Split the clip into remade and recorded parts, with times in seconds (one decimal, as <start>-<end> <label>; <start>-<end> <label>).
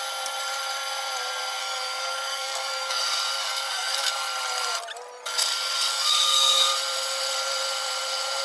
0.0-1.6 recorded; 1.6-3.0 remade; 3.0-3.4 recorded; 3.4-4.1 remade; 4.1-5.9 recorded; 5.9-6.6 remade; 6.6-8.4 recorded